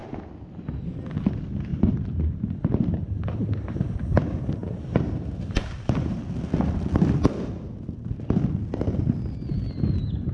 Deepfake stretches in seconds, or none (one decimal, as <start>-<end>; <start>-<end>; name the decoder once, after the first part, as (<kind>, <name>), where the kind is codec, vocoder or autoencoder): 1.7-3.8 (vocoder, BigVGAN v2); 4.6-6.2